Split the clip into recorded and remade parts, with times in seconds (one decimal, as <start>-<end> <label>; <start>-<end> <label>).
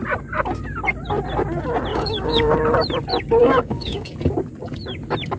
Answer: 0.0-1.9 recorded; 1.9-2.5 remade; 2.5-3.4 recorded; 3.4-4.1 remade; 4.1-5.4 recorded